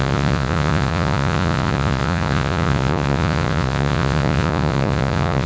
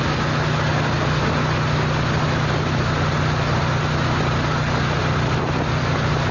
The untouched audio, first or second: second